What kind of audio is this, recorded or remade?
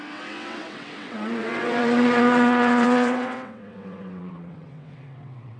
remade